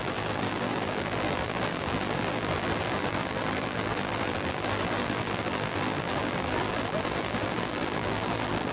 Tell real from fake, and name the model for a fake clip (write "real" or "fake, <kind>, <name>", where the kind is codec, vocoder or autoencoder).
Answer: fake, vocoder, BigVGAN v2